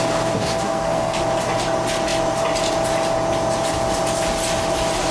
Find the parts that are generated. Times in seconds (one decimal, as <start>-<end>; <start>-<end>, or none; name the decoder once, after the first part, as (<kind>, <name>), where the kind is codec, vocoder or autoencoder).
0.4-1.2 (codec, SNAC)